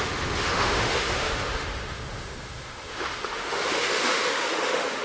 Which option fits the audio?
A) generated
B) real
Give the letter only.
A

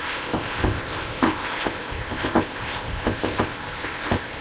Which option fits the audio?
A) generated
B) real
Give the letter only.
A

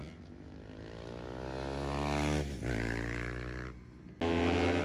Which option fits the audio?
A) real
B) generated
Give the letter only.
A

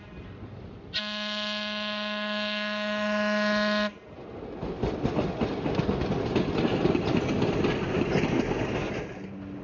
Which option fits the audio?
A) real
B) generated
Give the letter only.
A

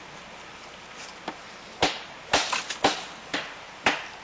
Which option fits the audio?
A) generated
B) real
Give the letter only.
B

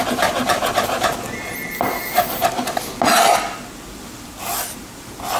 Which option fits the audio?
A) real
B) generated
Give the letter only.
A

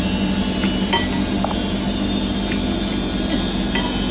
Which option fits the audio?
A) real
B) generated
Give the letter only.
A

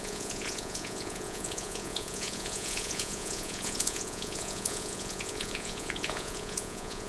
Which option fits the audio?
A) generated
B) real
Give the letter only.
A